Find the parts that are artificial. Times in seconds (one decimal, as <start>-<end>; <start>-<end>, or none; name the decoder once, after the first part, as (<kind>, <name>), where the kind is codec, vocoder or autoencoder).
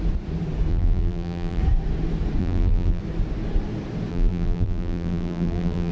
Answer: 0.7-1.6 (vocoder, BigVGAN v2); 2.4-3.0; 4.1-5.9